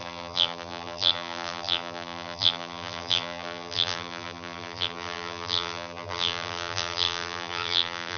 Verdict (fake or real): fake